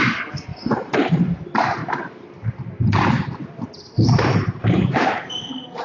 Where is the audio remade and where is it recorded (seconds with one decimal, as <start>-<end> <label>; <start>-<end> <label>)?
0.0-0.5 recorded; 0.5-1.4 remade; 1.4-1.8 recorded; 1.8-5.3 remade; 5.3-5.8 recorded